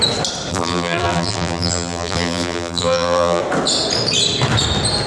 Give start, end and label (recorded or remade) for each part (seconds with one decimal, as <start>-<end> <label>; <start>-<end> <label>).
0.0-0.5 recorded; 0.5-3.4 remade; 3.4-5.1 recorded